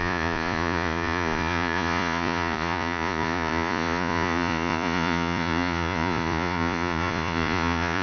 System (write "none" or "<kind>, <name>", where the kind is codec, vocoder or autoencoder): vocoder, Vocos